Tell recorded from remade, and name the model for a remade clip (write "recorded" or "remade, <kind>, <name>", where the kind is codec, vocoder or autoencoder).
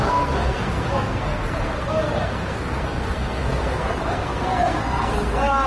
remade, codec, SNAC